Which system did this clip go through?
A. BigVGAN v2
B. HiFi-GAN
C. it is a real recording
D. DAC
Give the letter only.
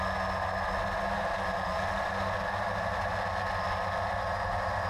C